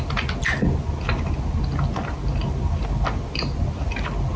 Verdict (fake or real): real